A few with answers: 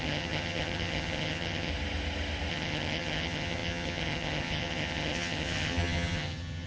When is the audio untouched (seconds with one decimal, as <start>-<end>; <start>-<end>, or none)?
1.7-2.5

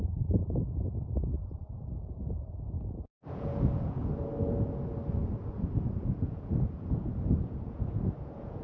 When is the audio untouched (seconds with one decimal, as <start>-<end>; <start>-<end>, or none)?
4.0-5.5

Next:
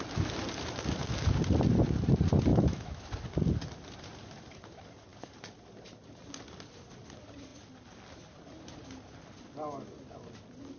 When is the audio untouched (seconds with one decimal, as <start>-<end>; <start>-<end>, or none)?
0.0-2.5; 3.1-10.8

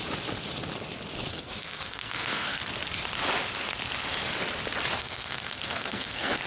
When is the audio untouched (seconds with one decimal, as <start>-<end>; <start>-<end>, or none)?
0.0-1.3; 2.6-5.0